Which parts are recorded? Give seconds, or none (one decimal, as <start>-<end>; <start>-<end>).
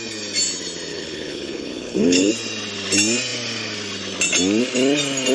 0.0-0.9; 2.3-5.3